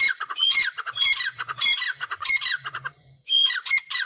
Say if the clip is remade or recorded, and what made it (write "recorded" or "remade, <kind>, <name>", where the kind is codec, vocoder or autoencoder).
remade, vocoder, Vocos